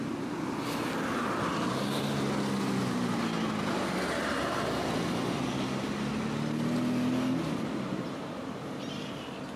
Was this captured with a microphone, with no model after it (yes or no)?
yes